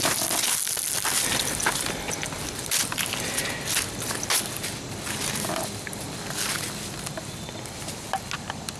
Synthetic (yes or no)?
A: no